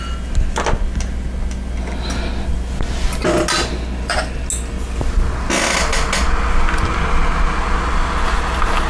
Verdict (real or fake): real